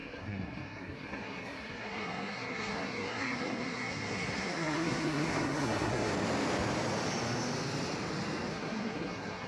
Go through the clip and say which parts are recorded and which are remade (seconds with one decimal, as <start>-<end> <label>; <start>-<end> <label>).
0.0-6.1 remade; 6.1-8.5 recorded; 8.5-9.5 remade